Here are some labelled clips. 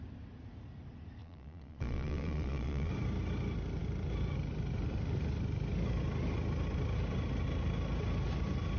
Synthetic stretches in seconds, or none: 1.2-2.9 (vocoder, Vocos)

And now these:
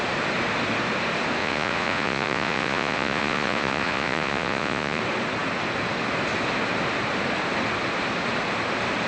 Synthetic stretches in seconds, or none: 1.4-5.0 (vocoder, Vocos)